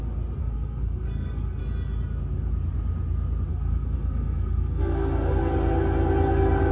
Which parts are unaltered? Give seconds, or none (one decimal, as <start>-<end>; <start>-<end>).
0.0-0.4; 1.6-3.5; 5.4-6.7